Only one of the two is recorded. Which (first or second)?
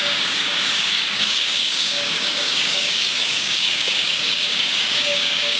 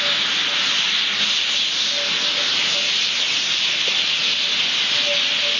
second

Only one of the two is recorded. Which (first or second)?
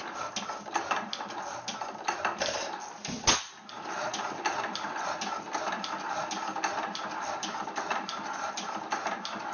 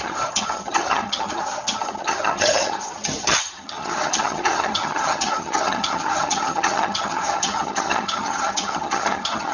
first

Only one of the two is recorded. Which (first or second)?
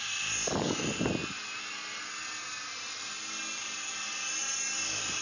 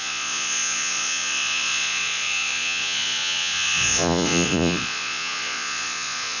first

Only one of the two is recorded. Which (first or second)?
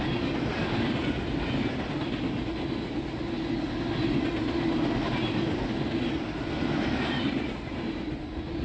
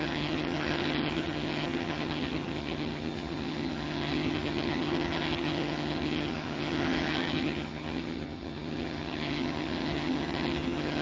first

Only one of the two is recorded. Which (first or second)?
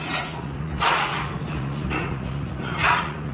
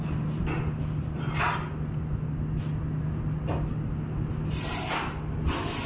second